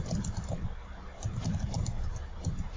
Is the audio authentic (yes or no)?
yes